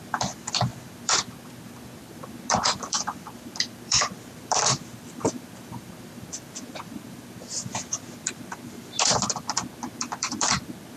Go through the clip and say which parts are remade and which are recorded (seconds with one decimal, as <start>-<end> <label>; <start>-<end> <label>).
0.0-11.0 remade